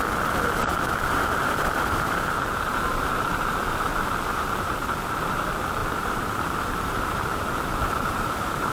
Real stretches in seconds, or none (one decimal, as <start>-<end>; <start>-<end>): 0.0-0.7; 4.7-5.8

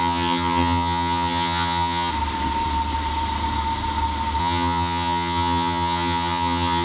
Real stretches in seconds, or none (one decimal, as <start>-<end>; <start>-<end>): 2.1-4.4

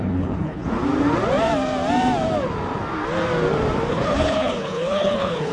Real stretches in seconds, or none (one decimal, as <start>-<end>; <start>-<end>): 0.6-3.9

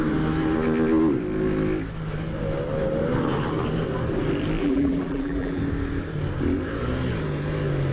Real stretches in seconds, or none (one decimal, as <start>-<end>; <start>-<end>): 0.0-4.6; 5.6-7.9

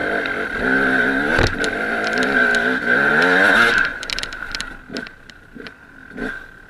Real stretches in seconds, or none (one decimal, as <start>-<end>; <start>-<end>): 0.6-3.9; 5.9-6.7